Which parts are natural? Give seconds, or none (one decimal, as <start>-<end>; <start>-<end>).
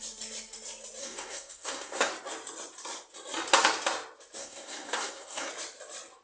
0.0-1.0; 2.1-4.4; 5.5-6.2